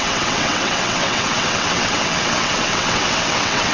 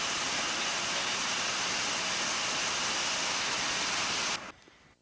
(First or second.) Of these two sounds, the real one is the second